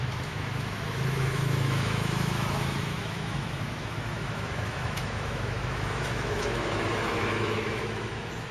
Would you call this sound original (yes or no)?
no